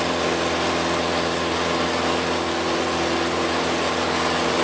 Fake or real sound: real